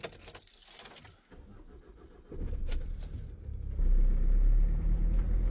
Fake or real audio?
real